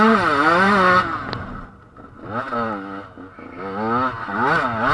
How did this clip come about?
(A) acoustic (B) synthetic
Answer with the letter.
A